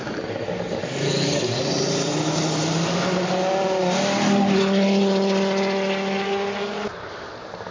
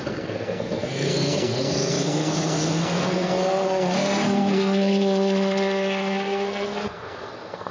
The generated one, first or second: second